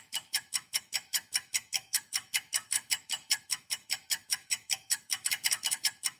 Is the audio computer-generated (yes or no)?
yes